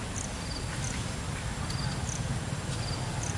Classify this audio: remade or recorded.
recorded